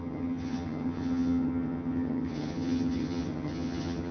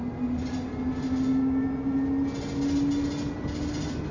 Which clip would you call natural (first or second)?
second